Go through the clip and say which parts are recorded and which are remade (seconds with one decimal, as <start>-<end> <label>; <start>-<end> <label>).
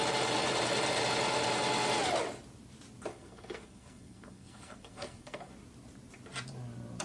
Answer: 0.0-3.1 recorded; 3.1-5.5 remade; 5.5-7.0 recorded